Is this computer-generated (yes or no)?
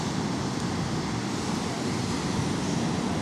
no